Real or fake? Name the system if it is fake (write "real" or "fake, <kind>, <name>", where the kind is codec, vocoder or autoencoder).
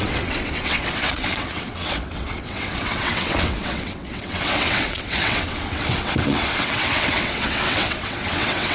fake, vocoder, WaveNeXt